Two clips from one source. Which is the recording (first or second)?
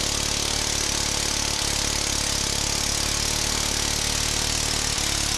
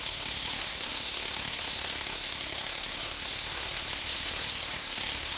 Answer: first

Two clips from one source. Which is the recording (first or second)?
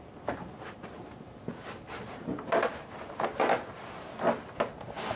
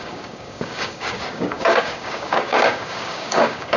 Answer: first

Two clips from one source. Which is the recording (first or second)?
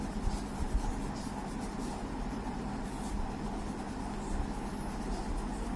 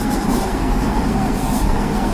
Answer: first